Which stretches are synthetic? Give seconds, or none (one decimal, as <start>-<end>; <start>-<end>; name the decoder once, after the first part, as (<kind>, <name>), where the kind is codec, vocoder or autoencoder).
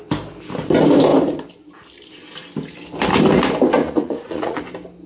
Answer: 3.8-4.6 (vocoder, Vocos)